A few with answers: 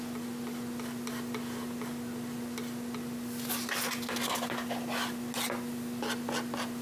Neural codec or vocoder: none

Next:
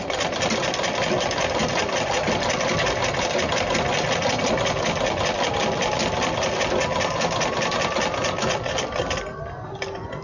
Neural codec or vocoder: none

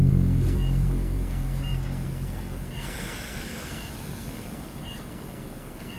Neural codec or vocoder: codec, SNAC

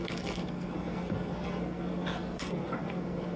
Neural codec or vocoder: codec, SNAC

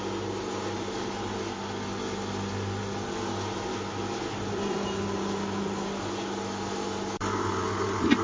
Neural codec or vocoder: none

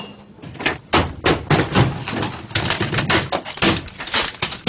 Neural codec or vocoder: none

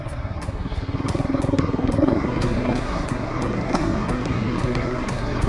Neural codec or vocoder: codec, SNAC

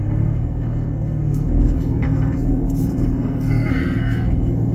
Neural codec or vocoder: codec, SNAC